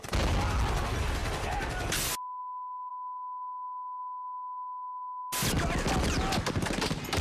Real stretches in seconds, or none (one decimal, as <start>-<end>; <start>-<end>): 0.0-7.2